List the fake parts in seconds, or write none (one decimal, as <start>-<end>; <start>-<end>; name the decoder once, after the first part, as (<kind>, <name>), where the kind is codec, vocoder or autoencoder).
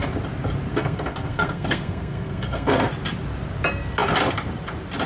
0.7-2.9 (codec, SNAC)